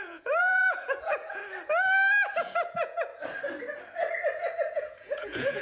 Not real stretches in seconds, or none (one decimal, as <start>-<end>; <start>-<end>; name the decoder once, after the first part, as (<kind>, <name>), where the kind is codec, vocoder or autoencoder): 0.0-1.4 (vocoder, Vocos); 2.3-3.1; 4.5-5.6